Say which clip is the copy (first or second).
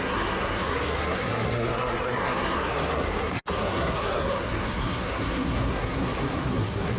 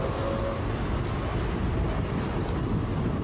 first